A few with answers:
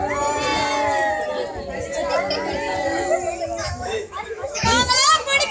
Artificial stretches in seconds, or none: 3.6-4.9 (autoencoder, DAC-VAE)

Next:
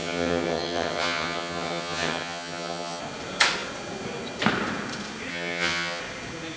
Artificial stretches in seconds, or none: 0.0-3.0 (vocoder, HiFi-GAN); 5.3-6.0

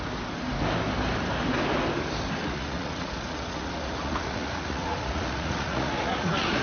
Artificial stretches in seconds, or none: 2.4-6.6 (vocoder, Vocos)

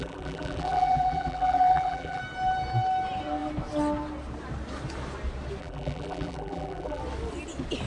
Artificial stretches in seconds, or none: 0.0-2.2 (vocoder, BigVGAN v2); 5.6-7.0